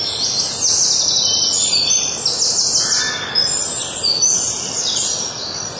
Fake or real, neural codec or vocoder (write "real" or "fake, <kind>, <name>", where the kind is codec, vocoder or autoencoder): real